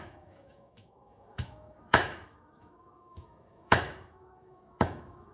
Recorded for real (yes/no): no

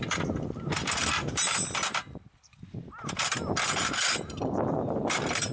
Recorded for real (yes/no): no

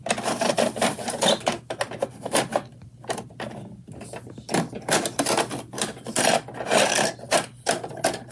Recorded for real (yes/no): yes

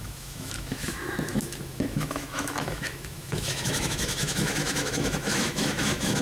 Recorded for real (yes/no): no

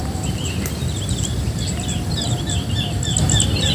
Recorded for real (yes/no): yes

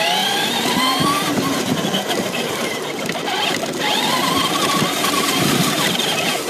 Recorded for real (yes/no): no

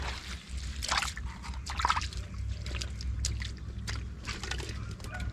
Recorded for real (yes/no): yes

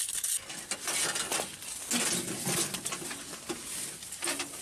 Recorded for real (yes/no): yes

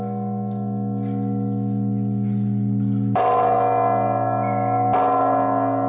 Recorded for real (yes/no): yes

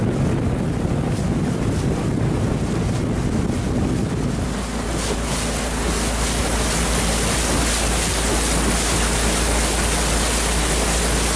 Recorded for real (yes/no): yes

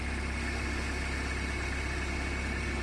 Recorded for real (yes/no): yes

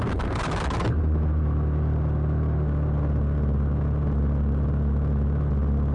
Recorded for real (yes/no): yes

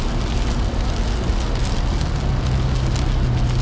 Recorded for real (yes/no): yes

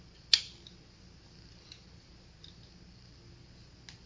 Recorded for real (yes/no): yes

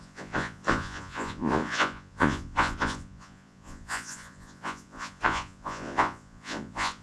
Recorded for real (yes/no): no